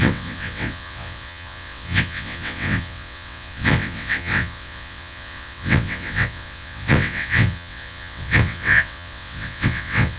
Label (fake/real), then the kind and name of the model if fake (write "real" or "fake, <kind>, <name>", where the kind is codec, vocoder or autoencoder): fake, vocoder, WaveNeXt